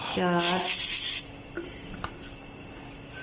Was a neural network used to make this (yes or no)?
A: no